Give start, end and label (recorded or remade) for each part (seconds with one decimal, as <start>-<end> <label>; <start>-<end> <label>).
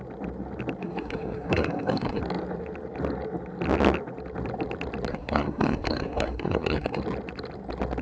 0.0-0.8 recorded; 0.8-2.2 remade; 2.2-5.1 recorded; 5.1-7.0 remade; 7.0-8.0 recorded